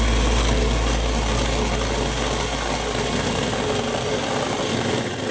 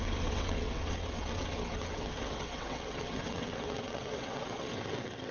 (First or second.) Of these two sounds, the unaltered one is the first